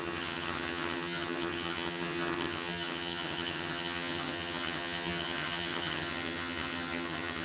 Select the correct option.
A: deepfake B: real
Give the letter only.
A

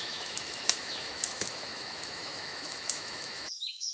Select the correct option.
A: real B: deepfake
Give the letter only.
B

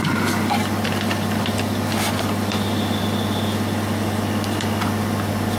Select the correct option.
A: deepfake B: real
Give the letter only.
B